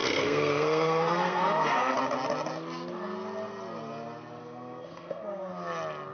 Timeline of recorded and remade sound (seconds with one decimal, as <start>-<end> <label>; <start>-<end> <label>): 0.0-2.0 remade; 2.0-4.4 recorded; 4.4-5.5 remade; 5.5-6.1 recorded